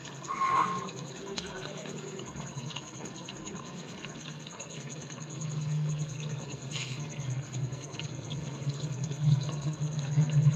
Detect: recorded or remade remade